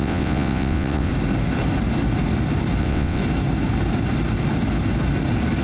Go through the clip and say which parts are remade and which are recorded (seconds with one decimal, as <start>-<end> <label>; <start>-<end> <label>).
0.0-1.1 remade; 1.1-2.8 recorded; 2.8-3.2 remade; 3.2-5.6 recorded